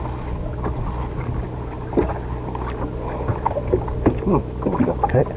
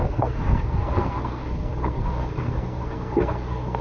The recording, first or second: first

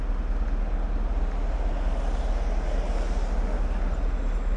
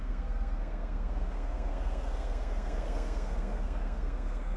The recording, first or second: first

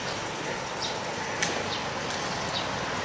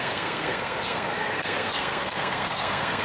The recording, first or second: first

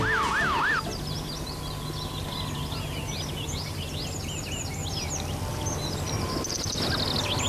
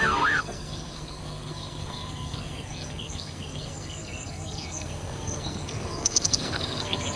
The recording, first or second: first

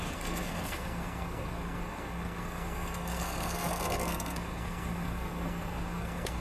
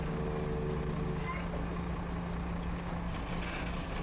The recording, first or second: second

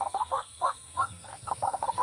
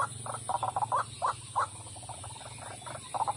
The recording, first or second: second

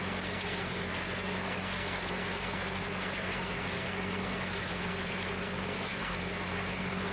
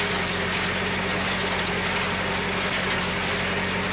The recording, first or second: second